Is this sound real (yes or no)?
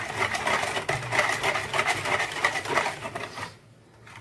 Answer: yes